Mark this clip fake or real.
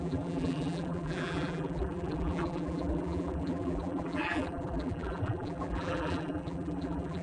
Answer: fake